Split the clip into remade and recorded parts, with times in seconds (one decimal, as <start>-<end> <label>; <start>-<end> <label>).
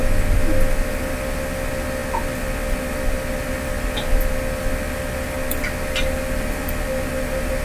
0.0-7.6 recorded